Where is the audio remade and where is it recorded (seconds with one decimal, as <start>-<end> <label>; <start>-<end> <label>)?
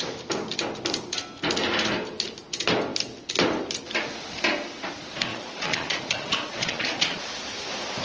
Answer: 0.0-5.3 recorded; 5.3-7.2 remade; 7.2-8.0 recorded